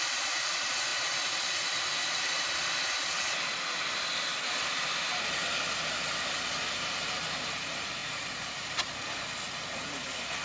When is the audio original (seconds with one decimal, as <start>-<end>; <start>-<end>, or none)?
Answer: 0.0-10.4